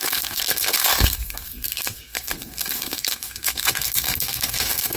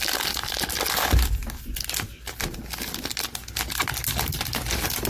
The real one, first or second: second